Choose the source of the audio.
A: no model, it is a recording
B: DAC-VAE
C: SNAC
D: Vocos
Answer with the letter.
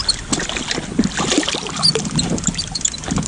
A